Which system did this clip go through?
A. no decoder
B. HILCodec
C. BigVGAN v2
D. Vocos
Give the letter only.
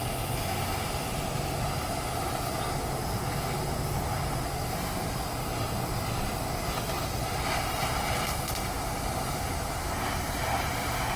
A